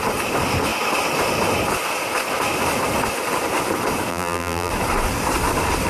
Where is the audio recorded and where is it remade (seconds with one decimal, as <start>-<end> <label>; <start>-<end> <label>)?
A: 0.0-4.1 recorded; 4.1-4.7 remade; 4.7-5.9 recorded